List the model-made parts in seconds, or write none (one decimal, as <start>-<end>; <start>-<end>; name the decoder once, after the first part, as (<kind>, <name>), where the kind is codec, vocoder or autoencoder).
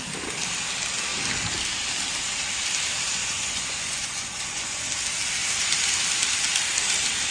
3.2-4.9 (vocoder, Vocos)